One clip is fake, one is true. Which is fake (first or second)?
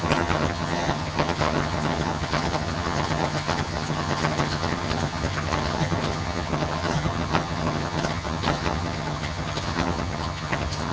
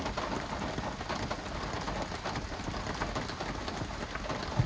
first